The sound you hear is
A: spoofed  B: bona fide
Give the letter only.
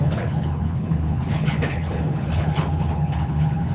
A